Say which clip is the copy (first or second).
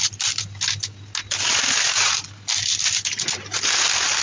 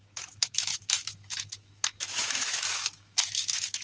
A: second